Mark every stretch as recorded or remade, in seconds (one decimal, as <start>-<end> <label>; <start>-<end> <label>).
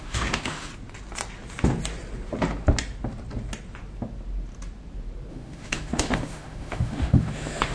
0.0-0.7 remade; 0.7-5.3 recorded; 5.3-7.7 remade